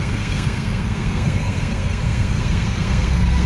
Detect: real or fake fake